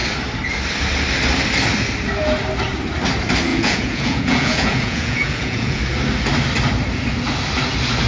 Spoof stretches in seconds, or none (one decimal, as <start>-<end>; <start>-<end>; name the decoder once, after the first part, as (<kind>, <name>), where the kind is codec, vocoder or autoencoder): 3.5-5.8 (vocoder, Vocos)